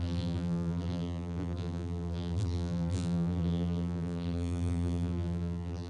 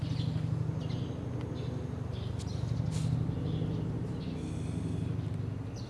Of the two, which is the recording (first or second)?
second